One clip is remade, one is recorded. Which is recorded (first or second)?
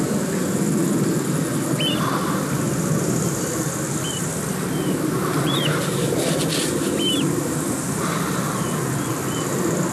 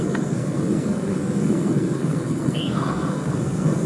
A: first